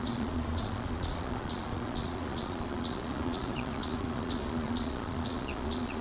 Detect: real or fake fake